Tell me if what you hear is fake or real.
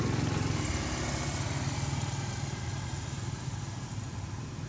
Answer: real